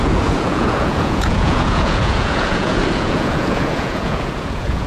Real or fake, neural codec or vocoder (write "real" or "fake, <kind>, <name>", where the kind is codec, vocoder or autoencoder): fake, vocoder, Vocos